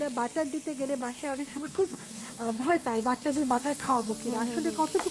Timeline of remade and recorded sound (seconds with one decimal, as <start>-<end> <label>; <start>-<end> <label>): 0.0-1.0 recorded; 1.0-4.1 remade; 4.1-5.1 recorded